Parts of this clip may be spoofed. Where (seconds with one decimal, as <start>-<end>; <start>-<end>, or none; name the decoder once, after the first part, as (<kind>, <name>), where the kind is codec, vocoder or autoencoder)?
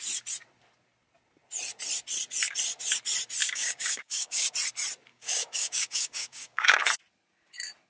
3.4-4.5 (codec, DAC); 5.1-6.8